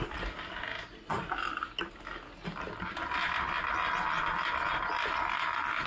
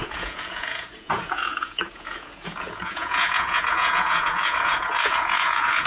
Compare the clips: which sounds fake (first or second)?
second